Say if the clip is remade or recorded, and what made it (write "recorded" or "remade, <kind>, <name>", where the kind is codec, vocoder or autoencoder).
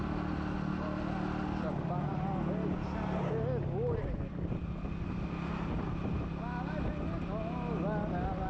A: recorded